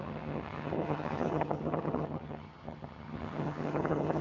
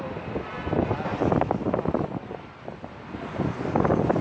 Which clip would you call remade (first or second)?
first